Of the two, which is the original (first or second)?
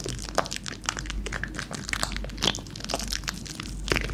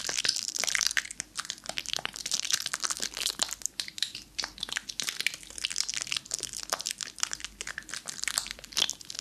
first